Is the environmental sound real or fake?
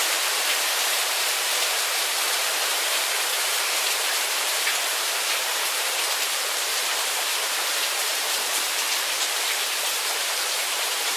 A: fake